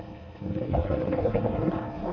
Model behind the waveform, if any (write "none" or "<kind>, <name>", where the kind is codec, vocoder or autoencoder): codec, SNAC